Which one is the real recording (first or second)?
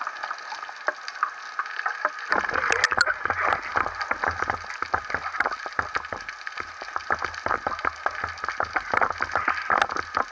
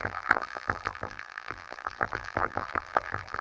first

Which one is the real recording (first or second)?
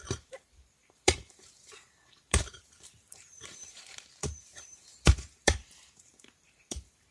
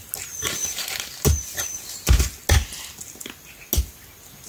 second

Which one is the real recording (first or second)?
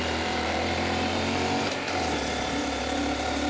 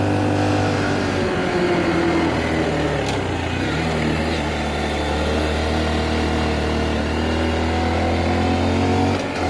second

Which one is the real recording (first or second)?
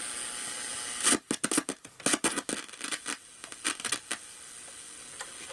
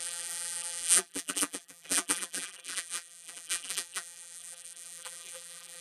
first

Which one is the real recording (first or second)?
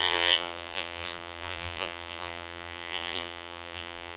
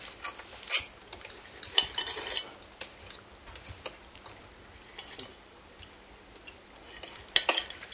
second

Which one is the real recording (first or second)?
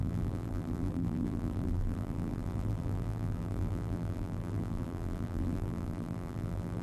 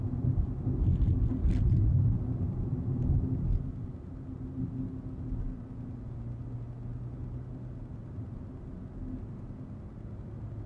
second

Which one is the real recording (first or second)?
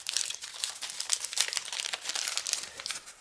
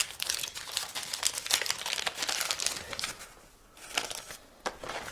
second